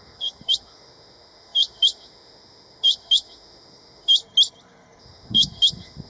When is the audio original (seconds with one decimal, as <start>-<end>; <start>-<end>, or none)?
4.2-5.0